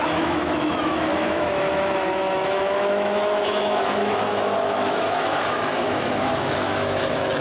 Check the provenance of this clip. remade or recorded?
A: remade